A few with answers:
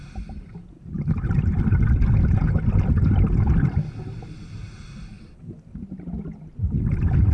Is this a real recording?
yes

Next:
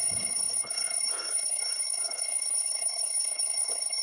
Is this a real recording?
no